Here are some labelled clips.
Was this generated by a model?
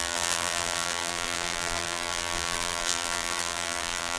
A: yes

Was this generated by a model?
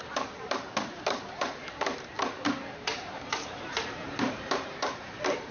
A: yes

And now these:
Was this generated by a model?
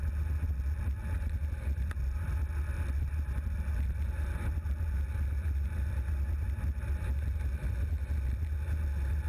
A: no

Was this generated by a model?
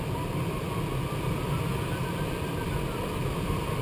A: yes